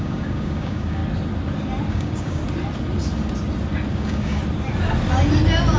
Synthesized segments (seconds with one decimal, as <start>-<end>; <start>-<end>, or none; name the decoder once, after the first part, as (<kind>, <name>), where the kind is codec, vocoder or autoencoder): 0.0-1.0 (codec, DAC); 1.9-2.4; 3.9-4.4